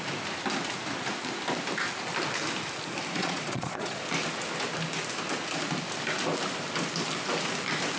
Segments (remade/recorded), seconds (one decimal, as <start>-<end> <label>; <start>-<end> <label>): 0.0-3.2 recorded; 3.2-4.0 remade; 4.0-8.0 recorded